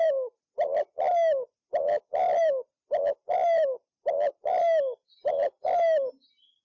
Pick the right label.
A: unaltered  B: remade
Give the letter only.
A